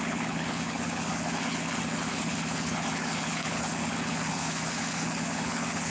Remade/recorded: remade